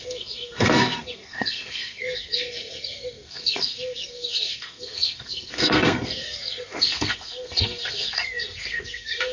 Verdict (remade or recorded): remade